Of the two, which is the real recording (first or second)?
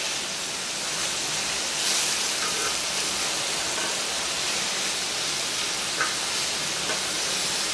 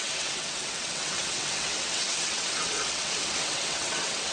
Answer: first